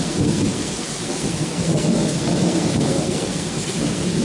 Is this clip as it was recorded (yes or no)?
no